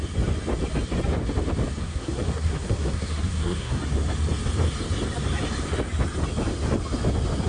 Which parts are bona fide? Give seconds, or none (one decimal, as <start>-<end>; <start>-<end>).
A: 0.0-1.8; 3.8-7.5